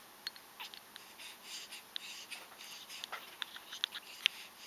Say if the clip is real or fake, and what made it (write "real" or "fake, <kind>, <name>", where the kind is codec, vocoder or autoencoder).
real